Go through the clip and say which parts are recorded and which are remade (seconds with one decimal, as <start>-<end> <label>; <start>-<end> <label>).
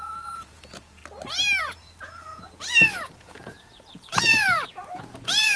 0.0-1.0 remade; 1.0-1.6 recorded; 1.6-5.6 remade